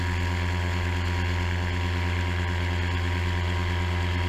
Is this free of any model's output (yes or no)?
yes